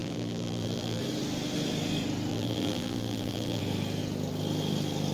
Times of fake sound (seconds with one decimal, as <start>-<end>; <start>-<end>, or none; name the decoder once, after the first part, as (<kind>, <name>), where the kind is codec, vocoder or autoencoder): 0.0-1.0 (vocoder, BigVGAN v2); 2.3-3.6